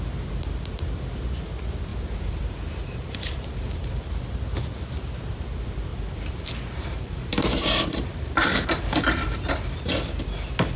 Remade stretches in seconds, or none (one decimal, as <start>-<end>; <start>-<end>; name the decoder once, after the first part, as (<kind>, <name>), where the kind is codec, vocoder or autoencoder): 1.9-3.9 (vocoder, BigVGAN v2); 5.9-9.9